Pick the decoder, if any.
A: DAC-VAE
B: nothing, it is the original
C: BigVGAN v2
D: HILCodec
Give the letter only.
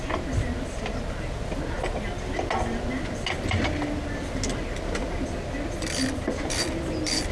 B